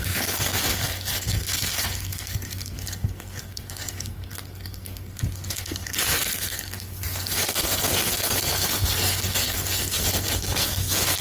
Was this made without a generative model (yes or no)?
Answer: no